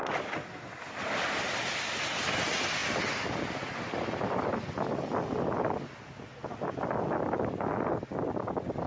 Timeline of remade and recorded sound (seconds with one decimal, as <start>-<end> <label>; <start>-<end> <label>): 0.0-8.9 recorded